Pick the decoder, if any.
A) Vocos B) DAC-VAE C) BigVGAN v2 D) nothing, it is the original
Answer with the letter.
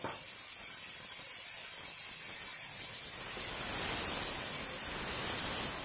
D